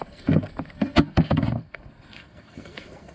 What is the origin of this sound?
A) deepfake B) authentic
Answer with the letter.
A